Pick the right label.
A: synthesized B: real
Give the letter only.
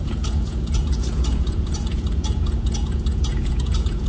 A